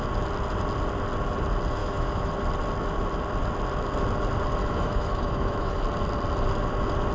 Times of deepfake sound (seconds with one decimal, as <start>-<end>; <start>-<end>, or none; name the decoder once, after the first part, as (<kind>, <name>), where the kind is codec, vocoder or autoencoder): 1.8-2.3 (autoencoder, DAC-VAE); 4.6-5.8